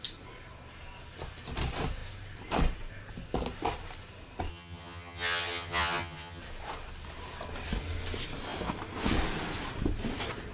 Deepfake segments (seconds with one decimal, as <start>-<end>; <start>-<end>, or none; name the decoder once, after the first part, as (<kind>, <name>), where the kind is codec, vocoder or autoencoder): 4.5-6.4 (vocoder, HiFi-GAN)